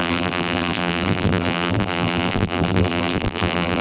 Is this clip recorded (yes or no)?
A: no